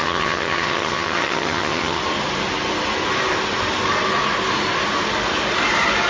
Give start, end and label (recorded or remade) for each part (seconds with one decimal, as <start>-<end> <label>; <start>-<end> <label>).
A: 0.0-2.0 remade; 2.0-6.1 recorded